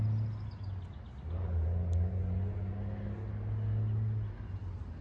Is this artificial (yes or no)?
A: no